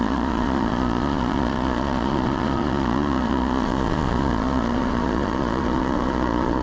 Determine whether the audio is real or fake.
fake